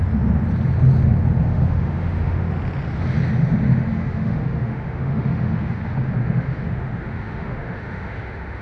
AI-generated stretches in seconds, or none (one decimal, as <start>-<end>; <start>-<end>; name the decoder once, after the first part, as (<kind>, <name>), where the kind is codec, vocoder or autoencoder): 1.5-2.5 (autoencoder, DAC-VAE); 3.9-5.8; 6.2-8.6